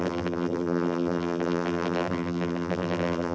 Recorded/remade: remade